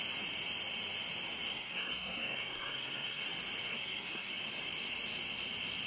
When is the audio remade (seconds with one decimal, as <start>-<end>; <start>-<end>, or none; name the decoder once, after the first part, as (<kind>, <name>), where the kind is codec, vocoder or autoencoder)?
1.5-3.2 (codec, SNAC); 3.7-4.3